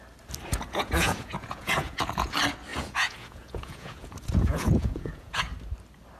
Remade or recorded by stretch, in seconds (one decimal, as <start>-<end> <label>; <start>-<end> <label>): 0.0-0.5 recorded; 0.5-2.3 remade; 2.3-2.7 recorded; 2.7-5.4 remade; 5.4-6.2 recorded